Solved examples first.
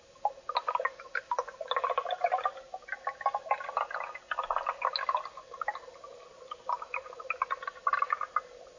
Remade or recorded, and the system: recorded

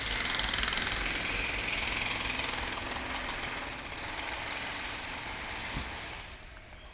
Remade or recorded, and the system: recorded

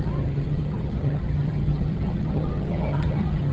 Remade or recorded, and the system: remade, vocoder, HiFi-GAN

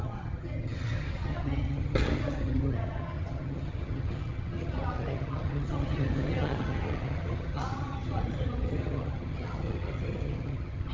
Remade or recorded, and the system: remade, vocoder, HiFi-GAN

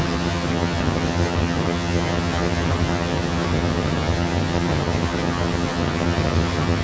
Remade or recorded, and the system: remade, vocoder, HiFi-GAN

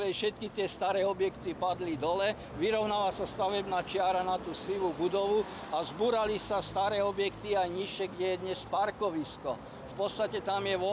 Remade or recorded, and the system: recorded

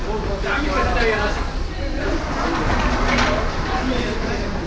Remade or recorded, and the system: recorded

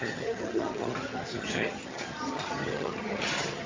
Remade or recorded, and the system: remade, vocoder, HiFi-GAN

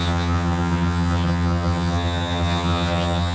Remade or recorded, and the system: remade, vocoder, HiFi-GAN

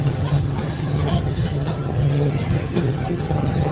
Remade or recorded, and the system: remade, vocoder, HiFi-GAN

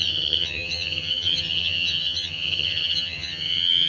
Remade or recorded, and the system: remade, vocoder, HiFi-GAN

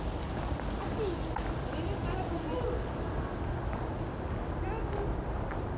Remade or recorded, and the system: recorded